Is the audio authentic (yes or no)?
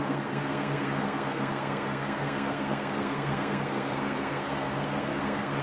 no